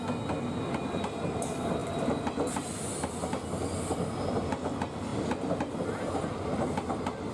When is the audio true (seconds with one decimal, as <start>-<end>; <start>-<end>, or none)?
0.0-7.3